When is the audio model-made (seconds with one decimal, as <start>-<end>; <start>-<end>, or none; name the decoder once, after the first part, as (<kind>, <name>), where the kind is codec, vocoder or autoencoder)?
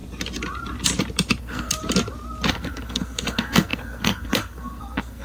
1.4-1.8 (codec, SNAC); 2.5-5.2